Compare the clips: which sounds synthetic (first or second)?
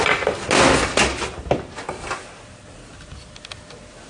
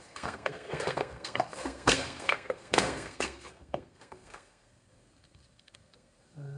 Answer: second